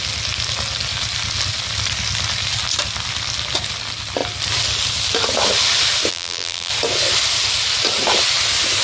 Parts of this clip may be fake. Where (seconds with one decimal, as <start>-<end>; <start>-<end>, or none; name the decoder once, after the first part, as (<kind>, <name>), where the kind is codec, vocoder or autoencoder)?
6.1-6.7 (vocoder, BigVGAN v2)